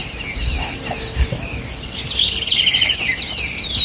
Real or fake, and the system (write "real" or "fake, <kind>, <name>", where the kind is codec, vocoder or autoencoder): real